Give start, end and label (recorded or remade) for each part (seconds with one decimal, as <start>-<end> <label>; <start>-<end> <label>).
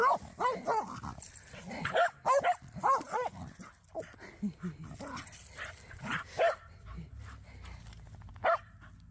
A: 0.0-9.1 recorded